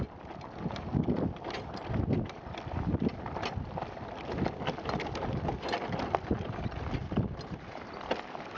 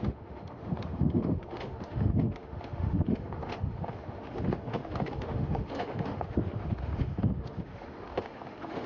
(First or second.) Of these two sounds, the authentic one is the first